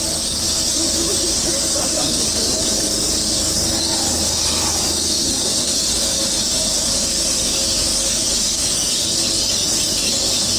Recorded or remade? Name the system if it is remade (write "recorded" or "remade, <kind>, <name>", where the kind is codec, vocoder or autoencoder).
remade, codec, DAC